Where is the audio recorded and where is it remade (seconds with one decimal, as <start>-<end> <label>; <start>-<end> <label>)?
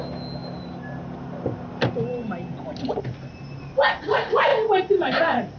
0.0-5.6 recorded